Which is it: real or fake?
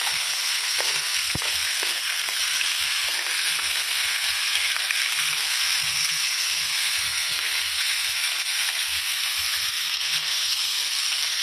fake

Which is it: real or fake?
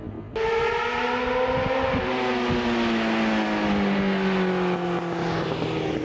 real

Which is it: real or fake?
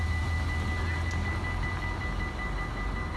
real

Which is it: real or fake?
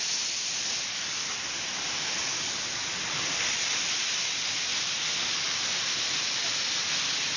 real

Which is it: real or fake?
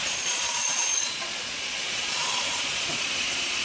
fake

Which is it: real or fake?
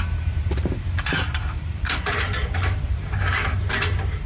fake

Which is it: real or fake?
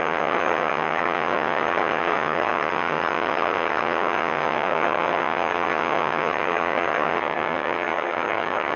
fake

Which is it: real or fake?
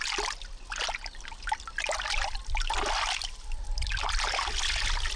real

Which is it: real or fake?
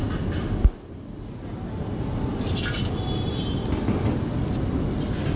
real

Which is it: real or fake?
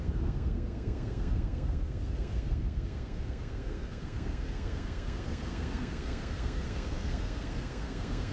fake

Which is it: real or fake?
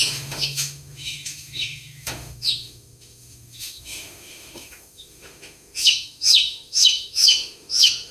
fake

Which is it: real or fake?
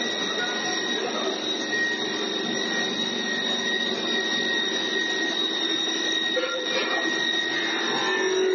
real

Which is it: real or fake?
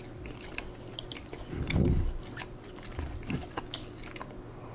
real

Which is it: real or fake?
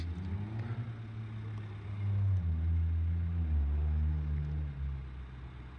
real